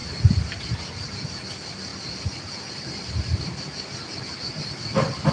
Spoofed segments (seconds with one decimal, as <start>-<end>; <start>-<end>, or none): none